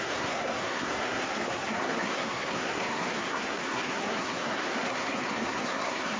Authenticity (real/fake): fake